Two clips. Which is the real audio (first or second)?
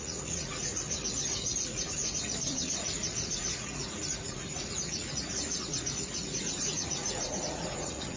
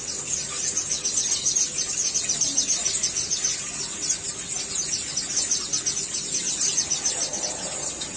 second